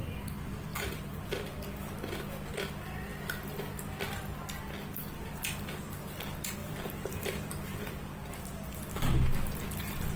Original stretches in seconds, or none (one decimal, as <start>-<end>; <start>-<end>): 0.0-0.7; 1.3-6.6; 8.5-10.2